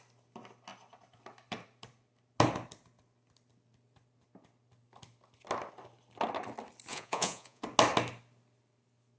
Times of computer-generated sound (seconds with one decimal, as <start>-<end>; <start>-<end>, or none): 6.9-7.6